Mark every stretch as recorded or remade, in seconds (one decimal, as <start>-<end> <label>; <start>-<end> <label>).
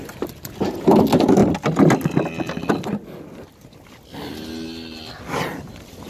0.0-6.1 recorded